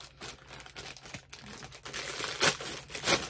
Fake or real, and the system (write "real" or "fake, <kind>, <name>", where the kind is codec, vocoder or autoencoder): real